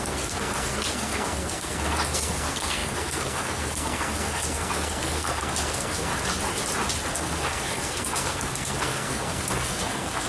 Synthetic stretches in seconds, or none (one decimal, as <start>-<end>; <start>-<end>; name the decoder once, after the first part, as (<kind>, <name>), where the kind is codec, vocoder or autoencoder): 0.0-6.1 (codec, SNAC); 7.1-10.3